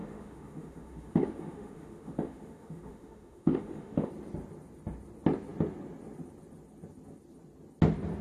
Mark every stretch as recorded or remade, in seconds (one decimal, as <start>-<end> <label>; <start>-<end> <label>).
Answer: 0.0-4.1 remade; 4.1-8.2 recorded